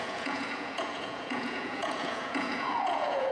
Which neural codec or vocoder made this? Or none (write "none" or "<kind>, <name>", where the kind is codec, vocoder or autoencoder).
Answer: vocoder, Vocos